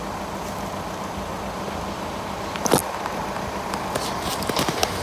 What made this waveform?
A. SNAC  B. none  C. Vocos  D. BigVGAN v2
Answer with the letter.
B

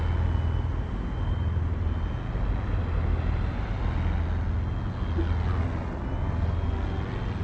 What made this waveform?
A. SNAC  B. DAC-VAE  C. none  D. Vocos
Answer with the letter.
C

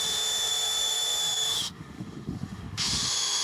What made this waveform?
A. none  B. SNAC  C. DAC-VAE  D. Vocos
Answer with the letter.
C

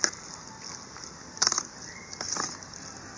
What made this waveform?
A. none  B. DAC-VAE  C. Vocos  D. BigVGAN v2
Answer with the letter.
A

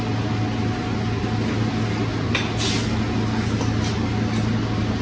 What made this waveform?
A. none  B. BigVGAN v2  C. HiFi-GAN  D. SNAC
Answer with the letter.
A